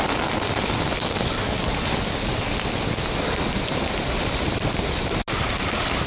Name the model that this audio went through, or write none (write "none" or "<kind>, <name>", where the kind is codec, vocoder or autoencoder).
none